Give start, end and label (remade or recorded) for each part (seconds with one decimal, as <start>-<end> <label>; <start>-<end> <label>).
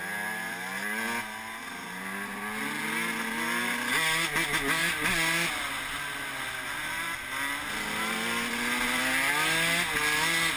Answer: 0.0-10.6 recorded